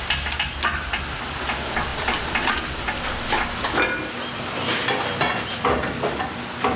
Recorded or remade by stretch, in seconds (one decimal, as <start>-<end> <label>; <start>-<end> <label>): 0.0-6.8 recorded